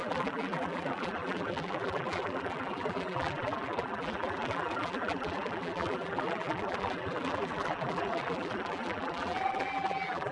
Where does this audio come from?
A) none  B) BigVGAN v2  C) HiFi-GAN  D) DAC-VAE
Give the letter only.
B